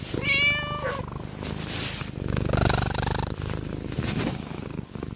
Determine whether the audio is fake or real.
real